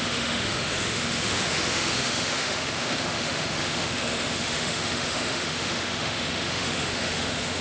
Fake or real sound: fake